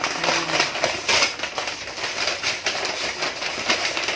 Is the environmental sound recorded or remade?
recorded